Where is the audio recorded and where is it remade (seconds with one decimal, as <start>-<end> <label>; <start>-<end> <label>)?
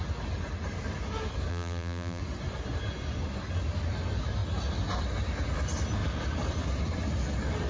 0.0-1.5 recorded; 1.5-2.2 remade; 2.2-7.7 recorded